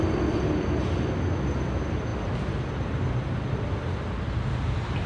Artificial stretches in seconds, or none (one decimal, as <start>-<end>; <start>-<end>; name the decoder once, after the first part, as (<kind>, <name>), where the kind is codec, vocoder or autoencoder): none

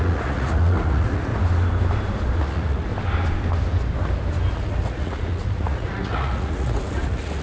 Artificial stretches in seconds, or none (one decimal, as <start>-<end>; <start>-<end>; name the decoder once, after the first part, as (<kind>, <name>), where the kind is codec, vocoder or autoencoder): 0.0-1.3 (vocoder, Vocos); 2.4-2.9; 4.5-7.4

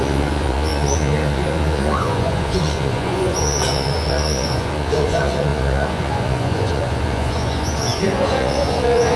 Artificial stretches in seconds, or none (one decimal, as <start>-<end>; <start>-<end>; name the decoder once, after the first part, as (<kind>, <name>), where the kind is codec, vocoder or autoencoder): 0.0-9.2 (vocoder, Vocos)